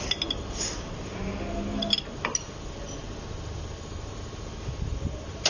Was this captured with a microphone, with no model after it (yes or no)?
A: yes